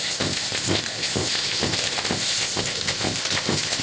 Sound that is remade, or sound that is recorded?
remade